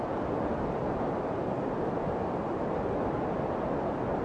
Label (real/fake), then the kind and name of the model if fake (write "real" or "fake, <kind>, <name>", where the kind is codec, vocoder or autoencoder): real